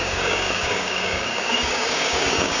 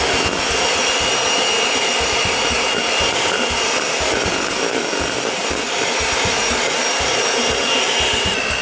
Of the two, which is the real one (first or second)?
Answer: second